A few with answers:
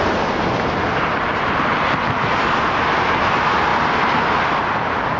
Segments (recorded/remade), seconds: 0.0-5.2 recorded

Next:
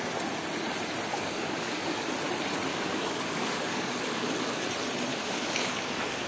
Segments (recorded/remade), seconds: 0.0-1.1 recorded; 1.1-2.1 remade; 2.1-2.7 recorded; 2.7-4.6 remade; 4.6-5.1 recorded; 5.1-6.3 remade

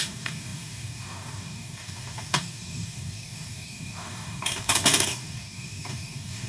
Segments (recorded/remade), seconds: 0.0-6.5 remade

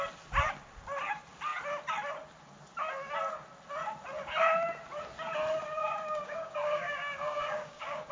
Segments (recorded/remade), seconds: 0.0-5.8 recorded; 5.8-8.1 remade

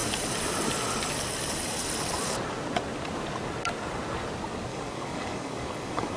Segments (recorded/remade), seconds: 0.0-4.7 recorded; 4.7-6.2 remade

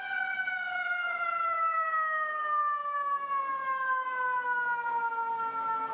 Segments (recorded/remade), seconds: 0.0-5.9 remade

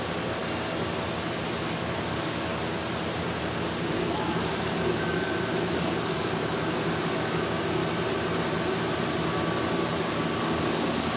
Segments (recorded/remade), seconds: 0.0-0.4 remade; 0.4-1.8 recorded; 1.8-2.5 remade; 2.5-3.4 recorded; 3.4-7.8 remade; 7.8-10.1 recorded; 10.1-11.2 remade